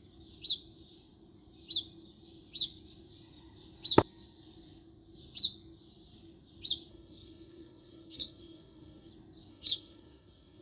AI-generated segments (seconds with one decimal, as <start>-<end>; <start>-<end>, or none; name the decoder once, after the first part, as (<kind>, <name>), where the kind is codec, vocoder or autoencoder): 6.9-9.1 (codec, SNAC); 9.5-10.6